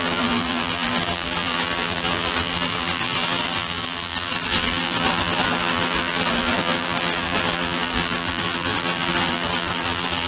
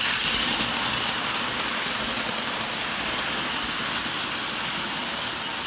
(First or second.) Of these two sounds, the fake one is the first